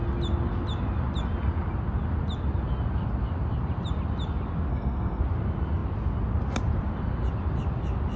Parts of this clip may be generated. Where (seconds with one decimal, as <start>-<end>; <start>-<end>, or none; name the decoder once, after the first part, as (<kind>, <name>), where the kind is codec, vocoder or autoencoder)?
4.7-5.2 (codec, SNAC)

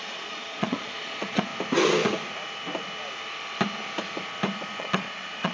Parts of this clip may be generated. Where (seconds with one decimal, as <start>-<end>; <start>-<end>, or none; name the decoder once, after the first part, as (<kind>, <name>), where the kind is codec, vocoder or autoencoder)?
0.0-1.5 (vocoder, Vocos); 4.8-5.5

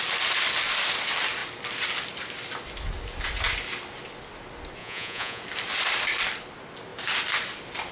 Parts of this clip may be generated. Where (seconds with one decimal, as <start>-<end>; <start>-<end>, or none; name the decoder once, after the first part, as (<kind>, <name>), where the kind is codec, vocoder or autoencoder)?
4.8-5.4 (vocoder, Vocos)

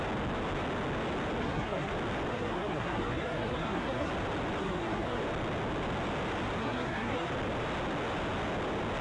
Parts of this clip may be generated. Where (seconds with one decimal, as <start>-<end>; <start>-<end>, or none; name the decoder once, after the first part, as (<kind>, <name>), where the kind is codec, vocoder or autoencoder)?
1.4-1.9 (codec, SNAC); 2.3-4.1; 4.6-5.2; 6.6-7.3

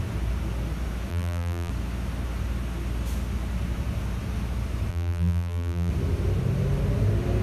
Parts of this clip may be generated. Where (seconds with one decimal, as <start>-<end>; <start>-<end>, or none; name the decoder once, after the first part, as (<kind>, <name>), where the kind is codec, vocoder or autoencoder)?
1.1-1.7 (vocoder, BigVGAN v2); 4.9-5.9

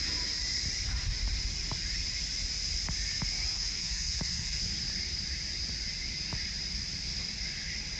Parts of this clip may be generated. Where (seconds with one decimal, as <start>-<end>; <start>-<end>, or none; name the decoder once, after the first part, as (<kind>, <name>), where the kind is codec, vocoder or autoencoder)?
3.5-4.6 (codec, SNAC)

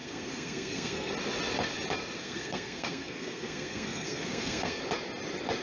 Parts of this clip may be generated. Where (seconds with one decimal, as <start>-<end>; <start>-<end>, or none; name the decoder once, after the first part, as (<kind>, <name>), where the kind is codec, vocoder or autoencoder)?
0.0-1.1 (codec, SNAC); 2.2-4.8

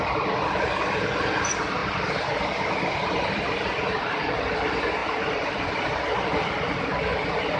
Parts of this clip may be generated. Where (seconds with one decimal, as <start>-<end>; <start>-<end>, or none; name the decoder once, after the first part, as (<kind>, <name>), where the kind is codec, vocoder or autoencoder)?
1.8-4.3 (vocoder, BigVGAN v2); 5.0-7.0